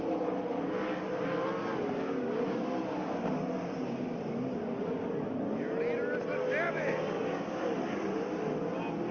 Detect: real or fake real